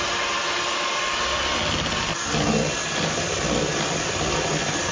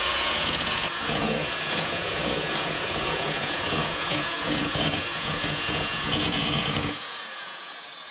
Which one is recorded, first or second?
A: first